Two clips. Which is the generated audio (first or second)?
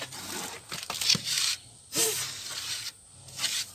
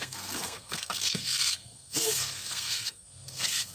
second